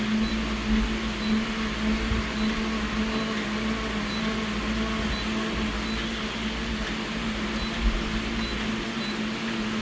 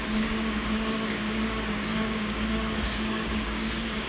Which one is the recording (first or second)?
first